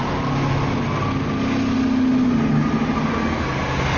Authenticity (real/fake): real